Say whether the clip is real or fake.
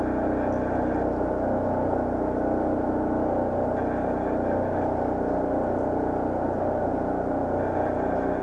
real